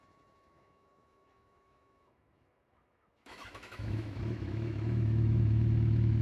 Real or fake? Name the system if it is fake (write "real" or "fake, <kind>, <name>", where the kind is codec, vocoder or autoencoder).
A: fake, autoencoder, DAC-VAE